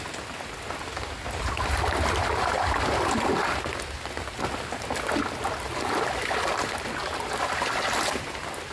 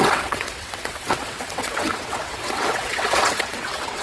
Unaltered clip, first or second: first